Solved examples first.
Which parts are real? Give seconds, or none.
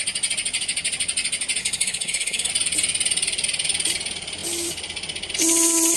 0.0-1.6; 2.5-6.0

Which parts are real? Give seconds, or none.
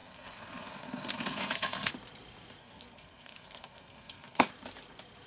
1.9-2.6; 4.5-5.3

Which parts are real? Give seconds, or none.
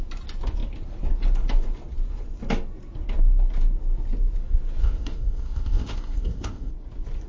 0.0-4.8; 6.7-7.3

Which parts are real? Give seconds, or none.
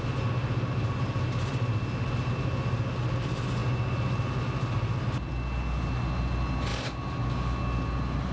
0.0-8.3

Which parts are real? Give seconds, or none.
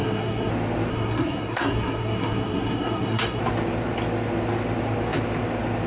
0.5-0.9; 3.4-5.9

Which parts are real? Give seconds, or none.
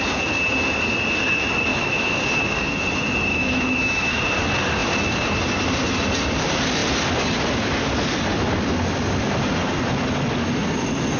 0.0-1.7; 2.2-3.3; 4.2-11.2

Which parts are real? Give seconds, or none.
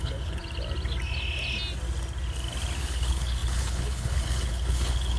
0.4-2.8